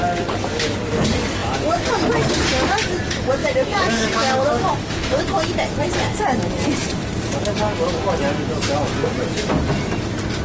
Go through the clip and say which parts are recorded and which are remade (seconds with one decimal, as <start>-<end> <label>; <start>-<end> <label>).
0.0-3.4 recorded; 3.4-5.2 remade; 5.2-10.4 recorded